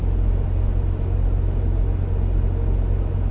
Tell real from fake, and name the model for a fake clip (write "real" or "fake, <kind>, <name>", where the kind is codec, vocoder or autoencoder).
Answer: real